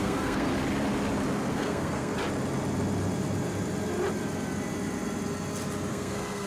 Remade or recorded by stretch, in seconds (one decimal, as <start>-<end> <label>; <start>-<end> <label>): 0.0-0.5 remade; 0.5-1.5 recorded; 1.5-2.1 remade; 2.1-5.9 recorded; 5.9-6.5 remade

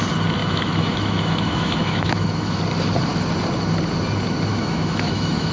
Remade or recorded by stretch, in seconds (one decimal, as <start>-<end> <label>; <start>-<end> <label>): 0.0-0.4 recorded; 0.4-2.6 remade; 2.6-4.5 recorded; 4.5-5.5 remade